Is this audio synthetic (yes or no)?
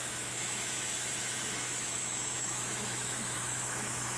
yes